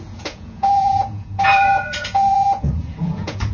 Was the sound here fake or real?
fake